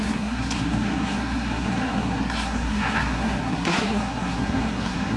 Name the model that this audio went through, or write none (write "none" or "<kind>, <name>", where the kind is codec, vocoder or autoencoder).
codec, SNAC